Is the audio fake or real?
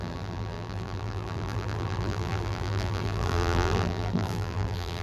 fake